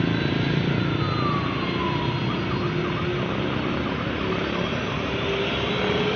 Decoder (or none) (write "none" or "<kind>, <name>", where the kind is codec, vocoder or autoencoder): none